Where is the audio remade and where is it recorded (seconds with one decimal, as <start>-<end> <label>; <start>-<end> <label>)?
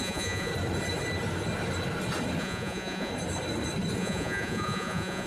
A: 0.0-0.5 remade; 0.5-2.4 recorded; 2.4-3.1 remade; 3.1-4.0 recorded; 4.0-5.3 remade